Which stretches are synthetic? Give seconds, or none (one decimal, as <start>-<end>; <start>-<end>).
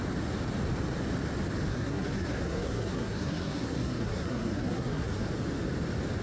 1.7-5.3